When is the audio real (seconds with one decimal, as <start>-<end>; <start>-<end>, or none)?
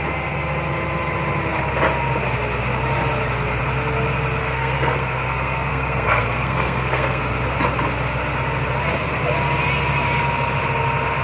0.0-4.4; 7.2-11.2